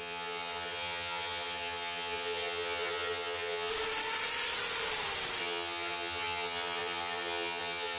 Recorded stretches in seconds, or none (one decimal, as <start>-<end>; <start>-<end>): 3.7-5.4